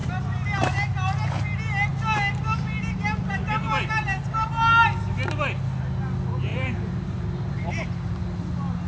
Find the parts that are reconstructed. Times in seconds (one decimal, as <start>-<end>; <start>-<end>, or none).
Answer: 6.5-8.2